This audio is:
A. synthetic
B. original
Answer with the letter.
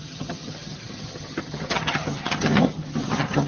A